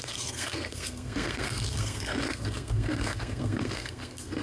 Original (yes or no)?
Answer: no